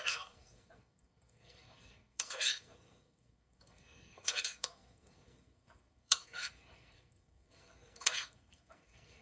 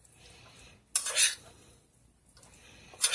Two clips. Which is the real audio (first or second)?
second